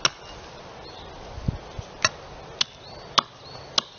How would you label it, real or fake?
real